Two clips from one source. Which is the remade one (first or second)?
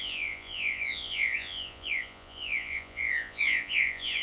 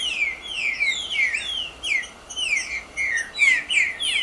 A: first